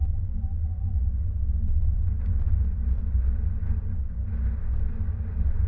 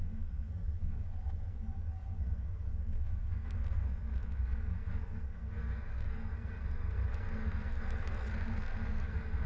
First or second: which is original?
first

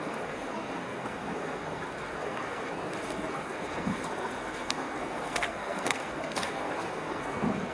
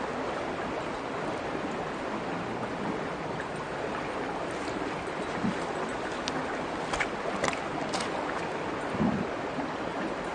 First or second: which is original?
second